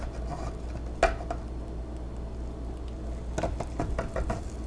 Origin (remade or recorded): recorded